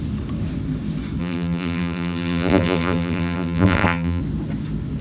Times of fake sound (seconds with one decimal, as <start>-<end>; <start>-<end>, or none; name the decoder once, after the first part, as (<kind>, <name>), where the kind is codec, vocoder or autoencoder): 1.2-4.2 (vocoder, BigVGAN v2)